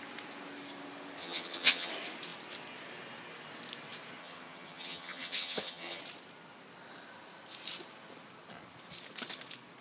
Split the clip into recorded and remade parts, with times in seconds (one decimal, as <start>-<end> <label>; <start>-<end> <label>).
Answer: 0.0-1.2 recorded; 1.2-1.9 remade; 1.9-4.2 recorded; 4.2-6.0 remade; 6.0-9.8 recorded